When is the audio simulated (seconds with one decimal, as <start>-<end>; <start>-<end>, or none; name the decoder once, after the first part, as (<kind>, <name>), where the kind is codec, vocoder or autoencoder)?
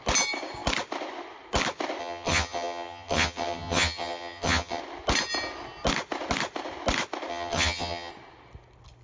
2.0-4.8 (vocoder, HiFi-GAN); 7.3-8.1